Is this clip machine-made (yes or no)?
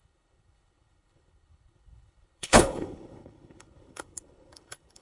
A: yes